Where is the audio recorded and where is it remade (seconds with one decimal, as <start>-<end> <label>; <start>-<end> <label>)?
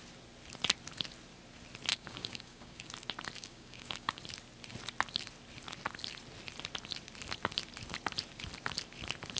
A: 0.0-1.9 recorded; 1.9-2.9 remade; 2.9-3.4 recorded; 3.4-4.2 remade; 4.2-9.4 recorded